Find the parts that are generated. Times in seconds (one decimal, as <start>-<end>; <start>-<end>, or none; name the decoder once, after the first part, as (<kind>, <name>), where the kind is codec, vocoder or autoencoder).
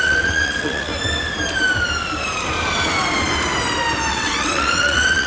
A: 0.0-0.9 (vocoder, WaveNeXt); 4.1-5.3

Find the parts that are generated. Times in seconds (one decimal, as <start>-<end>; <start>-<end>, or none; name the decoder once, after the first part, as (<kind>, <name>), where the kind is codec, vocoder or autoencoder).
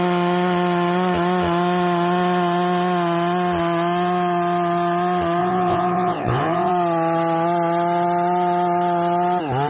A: 5.4-6.7 (vocoder, WaveNeXt)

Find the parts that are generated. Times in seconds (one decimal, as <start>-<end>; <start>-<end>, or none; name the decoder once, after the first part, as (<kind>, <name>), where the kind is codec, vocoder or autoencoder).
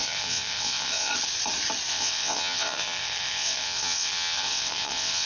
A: 0.0-1.1 (vocoder, WaveNeXt); 1.9-5.3